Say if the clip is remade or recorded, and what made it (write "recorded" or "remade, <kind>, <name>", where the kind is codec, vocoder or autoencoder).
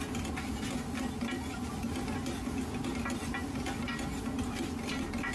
recorded